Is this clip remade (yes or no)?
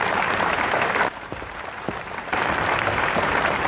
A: yes